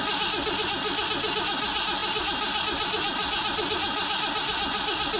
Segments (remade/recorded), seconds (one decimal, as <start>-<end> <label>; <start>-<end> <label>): 0.0-5.2 recorded